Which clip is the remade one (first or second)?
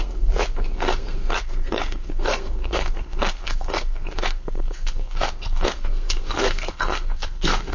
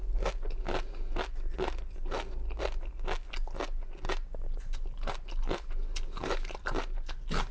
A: first